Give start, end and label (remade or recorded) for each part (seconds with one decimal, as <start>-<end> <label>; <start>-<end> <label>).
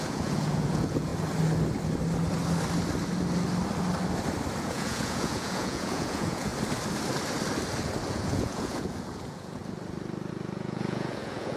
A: 0.0-1.1 remade; 1.1-4.6 recorded; 4.6-6.5 remade; 6.5-8.1 recorded; 8.1-9.6 remade; 9.6-10.3 recorded; 10.3-11.6 remade